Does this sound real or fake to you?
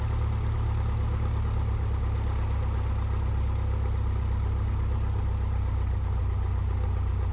real